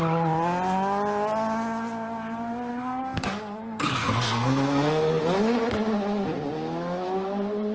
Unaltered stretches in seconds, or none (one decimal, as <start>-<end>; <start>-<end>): 0.0-2.7; 5.2-7.7